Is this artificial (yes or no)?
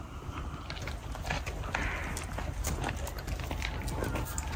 no